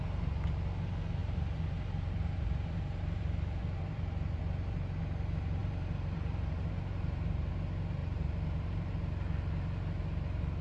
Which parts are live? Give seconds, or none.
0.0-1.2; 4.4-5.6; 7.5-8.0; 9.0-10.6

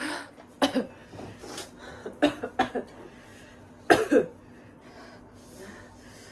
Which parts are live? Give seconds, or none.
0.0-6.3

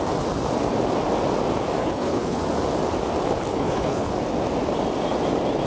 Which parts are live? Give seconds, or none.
0.0-1.8; 2.4-3.5; 4.1-5.7

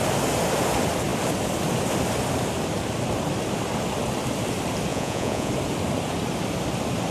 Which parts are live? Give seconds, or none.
0.0-4.9; 5.5-7.1